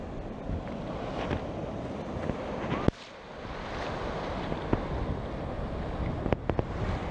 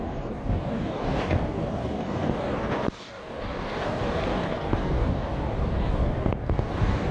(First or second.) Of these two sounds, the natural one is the first